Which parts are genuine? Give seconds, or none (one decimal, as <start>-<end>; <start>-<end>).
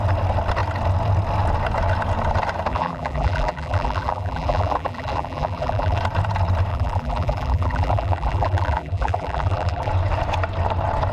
0.0-2.7; 6.0-6.7; 9.9-11.1